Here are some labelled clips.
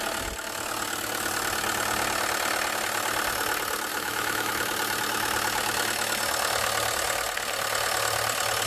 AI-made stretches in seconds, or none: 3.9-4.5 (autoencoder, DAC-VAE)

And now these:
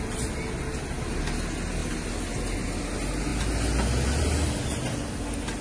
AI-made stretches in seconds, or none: none

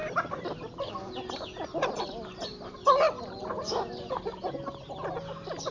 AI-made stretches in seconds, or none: 0.0-0.9 (vocoder, BigVGAN v2); 2.5-3.2

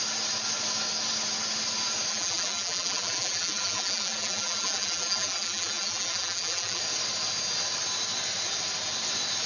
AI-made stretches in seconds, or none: 2.1-6.8 (vocoder, BigVGAN v2)

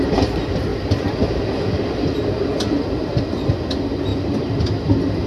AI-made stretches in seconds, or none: 0.7-1.2 (vocoder, BigVGAN v2); 4.1-5.3